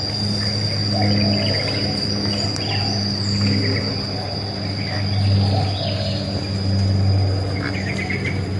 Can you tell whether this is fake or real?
real